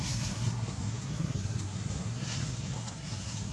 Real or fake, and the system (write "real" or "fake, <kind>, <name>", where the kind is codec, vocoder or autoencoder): fake, codec, SNAC